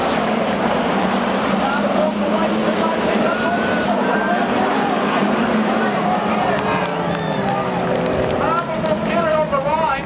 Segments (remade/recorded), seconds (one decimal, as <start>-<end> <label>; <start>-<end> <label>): 0.0-2.6 recorded; 2.6-6.4 remade; 6.4-10.1 recorded